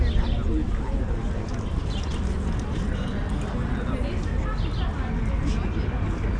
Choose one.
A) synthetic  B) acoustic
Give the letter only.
B